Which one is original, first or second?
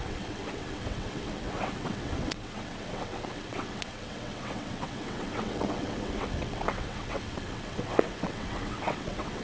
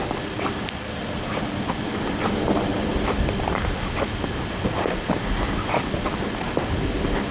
second